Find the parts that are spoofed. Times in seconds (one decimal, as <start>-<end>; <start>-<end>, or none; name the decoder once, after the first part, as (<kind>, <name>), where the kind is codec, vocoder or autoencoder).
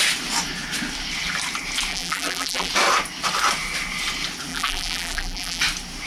1.9-2.7 (vocoder, BigVGAN v2); 4.5-5.6